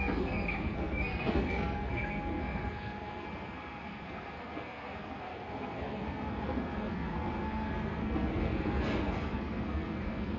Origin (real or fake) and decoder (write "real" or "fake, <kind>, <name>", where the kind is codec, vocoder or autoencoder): fake, codec, SNAC